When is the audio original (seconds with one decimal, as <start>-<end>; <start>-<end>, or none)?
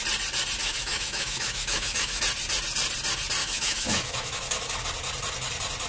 0.0-0.6; 2.2-3.4; 4.8-5.9